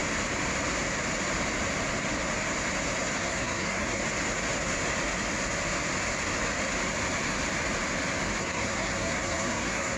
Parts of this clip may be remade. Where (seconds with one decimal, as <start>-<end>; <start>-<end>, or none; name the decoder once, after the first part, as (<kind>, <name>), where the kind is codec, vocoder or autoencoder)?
3.2-4.0 (codec, SNAC); 8.4-10.0